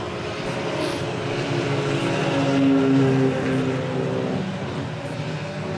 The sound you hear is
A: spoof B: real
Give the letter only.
B